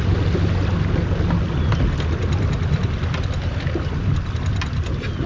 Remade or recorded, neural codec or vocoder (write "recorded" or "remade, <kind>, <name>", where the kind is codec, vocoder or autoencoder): recorded